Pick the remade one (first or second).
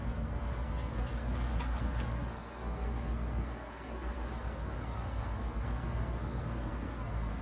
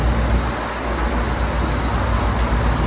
first